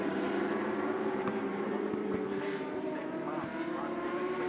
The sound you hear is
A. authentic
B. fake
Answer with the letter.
B